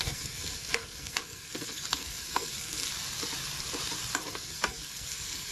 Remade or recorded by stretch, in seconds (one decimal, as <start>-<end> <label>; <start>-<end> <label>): 0.0-2.9 remade; 2.9-4.3 recorded; 4.3-5.5 remade